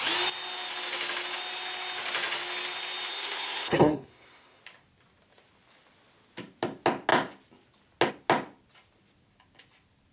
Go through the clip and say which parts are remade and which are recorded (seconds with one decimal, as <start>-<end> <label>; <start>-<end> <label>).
0.0-3.1 recorded; 3.1-4.6 remade; 4.6-10.1 recorded